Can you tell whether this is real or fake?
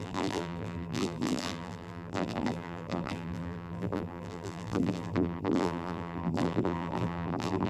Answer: fake